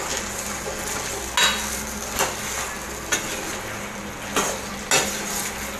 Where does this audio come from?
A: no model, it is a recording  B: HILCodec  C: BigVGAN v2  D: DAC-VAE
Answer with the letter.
A